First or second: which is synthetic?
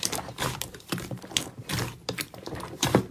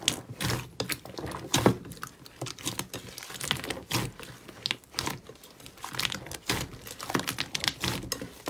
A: first